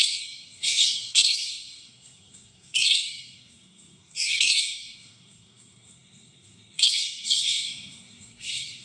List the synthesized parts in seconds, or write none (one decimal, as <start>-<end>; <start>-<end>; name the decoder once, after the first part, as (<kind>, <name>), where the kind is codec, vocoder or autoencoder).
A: 0.0-8.8 (codec, SNAC)